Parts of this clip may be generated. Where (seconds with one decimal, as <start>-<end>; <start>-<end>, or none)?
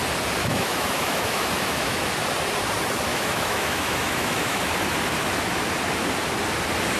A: 0.4-2.1; 3.1-4.6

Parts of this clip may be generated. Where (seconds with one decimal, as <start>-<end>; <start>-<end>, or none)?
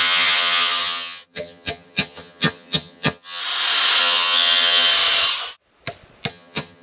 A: 0.0-3.4; 4.0-4.9; 6.3-6.8